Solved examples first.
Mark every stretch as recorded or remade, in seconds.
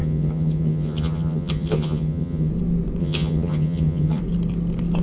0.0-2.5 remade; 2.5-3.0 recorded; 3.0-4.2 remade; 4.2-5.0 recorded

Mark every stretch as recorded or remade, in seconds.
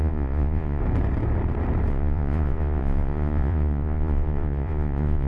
0.0-0.8 remade; 0.8-1.9 recorded; 1.9-5.3 remade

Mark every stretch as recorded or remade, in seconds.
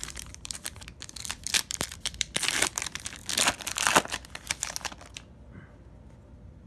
0.0-2.8 remade; 2.8-6.7 recorded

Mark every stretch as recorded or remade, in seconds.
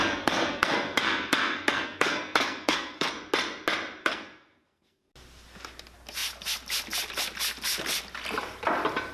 0.0-3.1 remade; 3.1-4.0 recorded; 4.0-5.1 remade; 5.1-9.1 recorded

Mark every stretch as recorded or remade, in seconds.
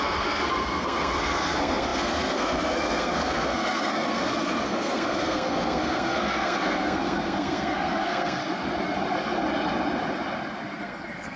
0.0-8.4 remade; 8.4-10.8 recorded; 10.8-11.4 remade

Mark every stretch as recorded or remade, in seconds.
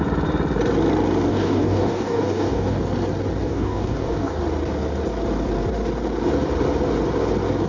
0.0-1.3 recorded; 1.3-2.8 remade; 2.8-3.4 recorded; 3.4-4.4 remade; 4.4-7.7 recorded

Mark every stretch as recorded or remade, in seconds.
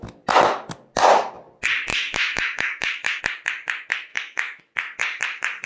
0.0-1.9 recorded; 1.9-3.2 remade; 3.2-4.1 recorded; 4.1-4.6 remade; 4.6-5.7 recorded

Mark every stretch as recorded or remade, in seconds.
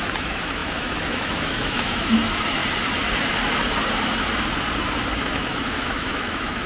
0.0-2.6 remade; 2.6-5.2 recorded; 5.2-6.7 remade